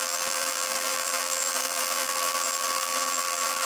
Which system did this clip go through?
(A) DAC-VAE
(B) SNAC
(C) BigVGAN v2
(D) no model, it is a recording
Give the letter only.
C